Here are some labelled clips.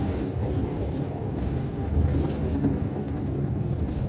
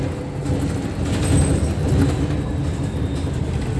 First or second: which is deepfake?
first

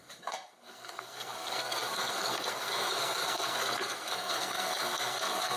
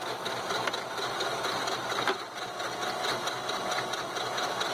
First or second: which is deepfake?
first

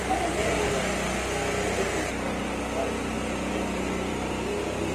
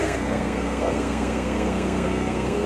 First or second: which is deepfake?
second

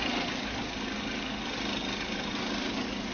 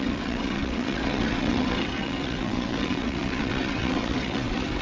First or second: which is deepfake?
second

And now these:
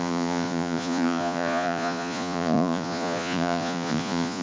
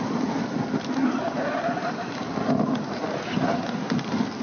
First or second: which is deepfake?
first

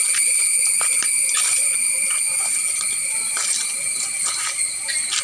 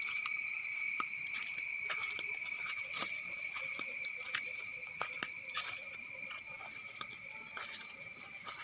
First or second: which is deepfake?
second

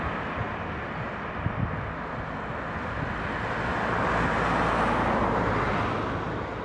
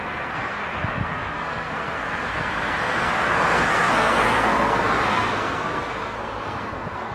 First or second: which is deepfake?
second